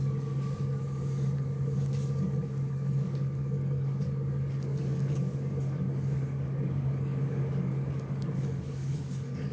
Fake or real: fake